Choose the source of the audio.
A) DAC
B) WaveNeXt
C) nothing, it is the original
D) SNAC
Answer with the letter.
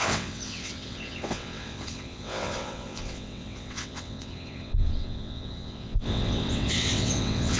B